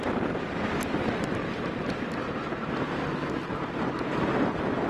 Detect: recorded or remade recorded